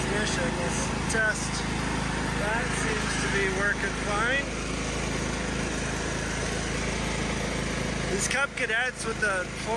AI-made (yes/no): no